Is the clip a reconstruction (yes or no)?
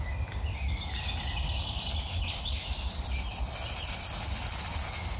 no